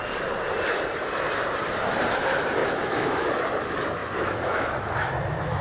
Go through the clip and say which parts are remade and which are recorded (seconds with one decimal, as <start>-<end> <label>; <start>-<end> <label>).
0.0-2.6 recorded; 2.6-3.3 remade; 3.3-4.0 recorded; 4.0-5.6 remade